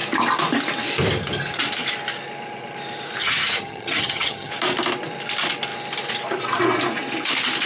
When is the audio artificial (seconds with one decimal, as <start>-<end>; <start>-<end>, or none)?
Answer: 3.2-4.5